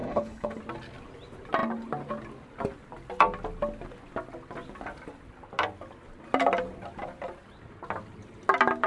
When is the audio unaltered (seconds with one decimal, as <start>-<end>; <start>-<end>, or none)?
0.6-8.9